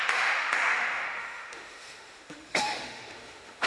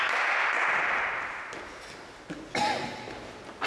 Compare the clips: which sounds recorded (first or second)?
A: second